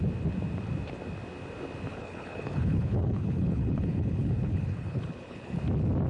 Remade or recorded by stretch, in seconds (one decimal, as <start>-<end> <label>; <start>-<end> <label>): 0.0-1.9 recorded; 1.9-5.6 remade; 5.6-6.1 recorded